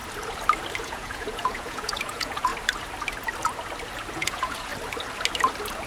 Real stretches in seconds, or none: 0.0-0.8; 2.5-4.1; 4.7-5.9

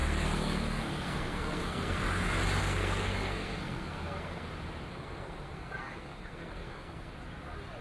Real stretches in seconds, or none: 2.0-2.6; 4.5-4.9; 7.1-7.8

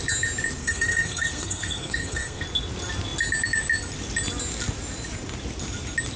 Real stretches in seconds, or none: 0.0-0.6; 2.4-6.2

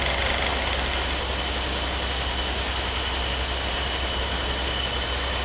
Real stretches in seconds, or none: 0.0-5.4